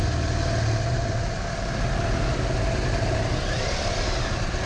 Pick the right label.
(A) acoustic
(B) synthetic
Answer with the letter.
A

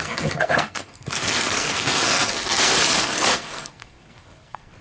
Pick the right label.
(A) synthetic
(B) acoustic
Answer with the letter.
A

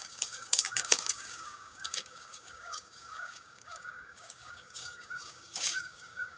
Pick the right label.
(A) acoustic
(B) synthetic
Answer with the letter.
B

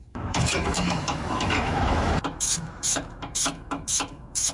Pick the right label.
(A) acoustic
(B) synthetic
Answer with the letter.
B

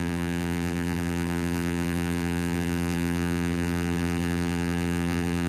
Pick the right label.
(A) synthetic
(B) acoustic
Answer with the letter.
A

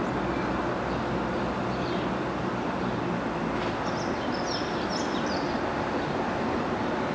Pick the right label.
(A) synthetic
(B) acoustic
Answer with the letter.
B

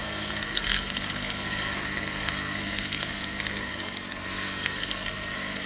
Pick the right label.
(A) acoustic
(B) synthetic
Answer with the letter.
B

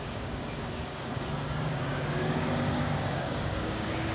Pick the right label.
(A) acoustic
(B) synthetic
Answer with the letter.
B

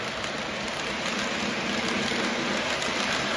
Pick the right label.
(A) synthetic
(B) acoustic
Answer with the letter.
B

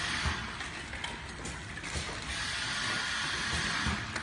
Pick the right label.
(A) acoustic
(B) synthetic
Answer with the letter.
A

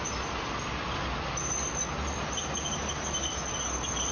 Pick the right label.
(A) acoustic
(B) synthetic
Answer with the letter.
A